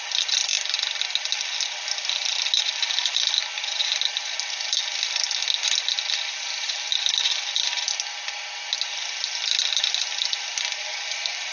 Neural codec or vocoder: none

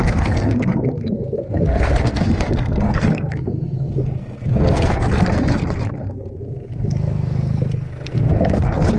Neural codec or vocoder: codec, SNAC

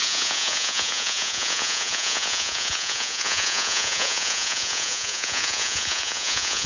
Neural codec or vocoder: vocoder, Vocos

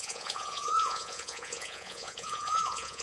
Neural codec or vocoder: vocoder, Vocos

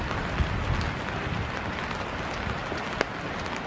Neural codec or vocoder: none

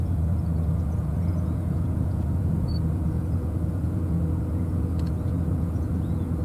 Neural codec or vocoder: vocoder, Vocos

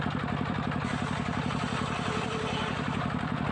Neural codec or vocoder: vocoder, BigVGAN v2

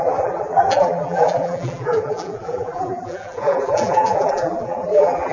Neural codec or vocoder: vocoder, BigVGAN v2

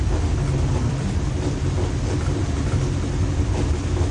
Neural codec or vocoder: vocoder, BigVGAN v2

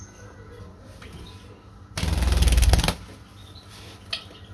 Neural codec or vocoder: none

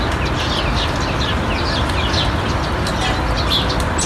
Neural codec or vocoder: none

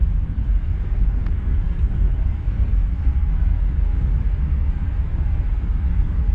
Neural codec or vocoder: codec, SNAC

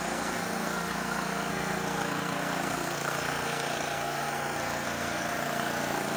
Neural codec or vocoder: codec, SNAC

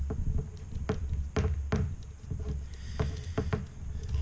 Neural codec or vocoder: none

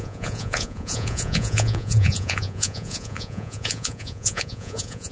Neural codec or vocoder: vocoder, Vocos